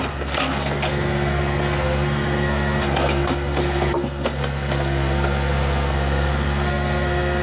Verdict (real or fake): fake